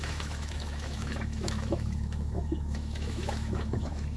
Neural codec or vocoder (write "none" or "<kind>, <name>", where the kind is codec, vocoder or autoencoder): autoencoder, DAC-VAE